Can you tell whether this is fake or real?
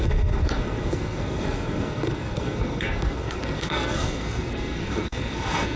fake